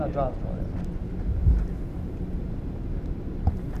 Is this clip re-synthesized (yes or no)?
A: no